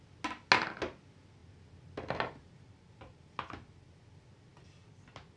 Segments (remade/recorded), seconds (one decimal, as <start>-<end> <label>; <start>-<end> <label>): 0.0-5.4 recorded